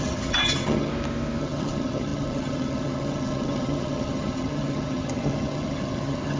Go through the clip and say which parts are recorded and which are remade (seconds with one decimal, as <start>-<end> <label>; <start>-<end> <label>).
0.0-0.9 remade; 0.9-1.4 recorded; 1.4-6.4 remade